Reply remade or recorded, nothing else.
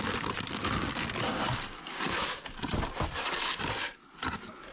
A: recorded